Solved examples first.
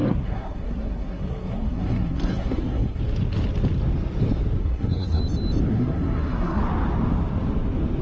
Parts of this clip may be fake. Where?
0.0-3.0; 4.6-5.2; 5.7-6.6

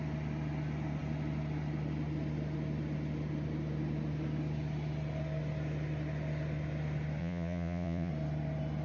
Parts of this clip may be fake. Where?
7.2-8.1

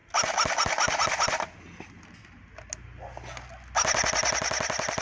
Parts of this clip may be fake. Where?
none

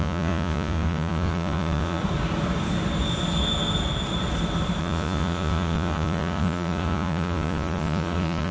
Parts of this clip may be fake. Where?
0.0-2.0; 4.8-8.5